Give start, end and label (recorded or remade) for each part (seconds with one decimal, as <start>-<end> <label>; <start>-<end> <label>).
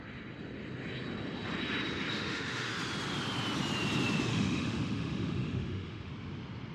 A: 0.0-2.1 recorded; 2.1-2.7 remade; 2.7-4.3 recorded; 4.3-6.1 remade; 6.1-6.7 recorded